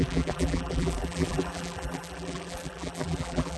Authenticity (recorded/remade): remade